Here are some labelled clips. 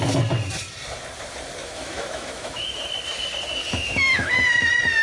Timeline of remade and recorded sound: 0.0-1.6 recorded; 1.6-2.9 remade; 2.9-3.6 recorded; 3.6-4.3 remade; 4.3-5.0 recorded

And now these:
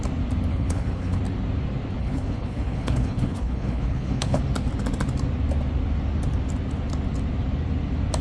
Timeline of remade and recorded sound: 0.0-0.5 recorded; 0.5-1.2 remade; 1.2-2.0 recorded; 2.0-4.4 remade; 4.4-8.2 recorded

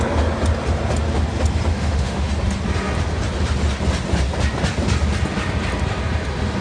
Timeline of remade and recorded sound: 0.0-1.7 recorded; 1.7-2.3 remade; 2.3-6.6 recorded

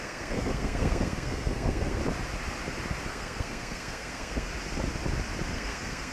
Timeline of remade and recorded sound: 0.0-2.0 remade; 2.0-3.1 recorded; 3.1-4.5 remade; 4.5-5.5 recorded; 5.5-6.1 remade

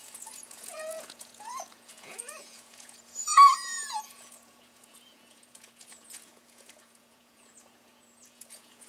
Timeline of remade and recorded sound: 0.0-8.9 remade

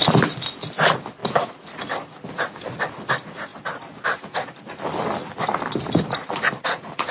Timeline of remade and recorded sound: 0.0-7.1 recorded

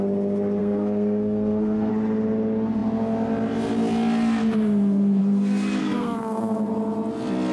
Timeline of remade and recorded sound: 0.0-0.6 recorded; 0.6-1.9 remade; 1.9-5.8 recorded; 5.8-6.7 remade; 6.7-7.5 recorded